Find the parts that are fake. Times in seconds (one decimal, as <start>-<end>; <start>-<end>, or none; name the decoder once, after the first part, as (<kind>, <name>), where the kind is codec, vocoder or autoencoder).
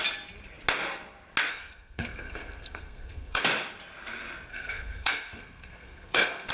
1.5-3.4 (codec, SNAC); 4.5-6.5